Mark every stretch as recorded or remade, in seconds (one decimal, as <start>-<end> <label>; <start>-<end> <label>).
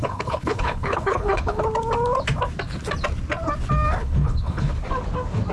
0.0-1.6 remade; 1.6-4.0 recorded; 4.0-4.7 remade; 4.7-5.5 recorded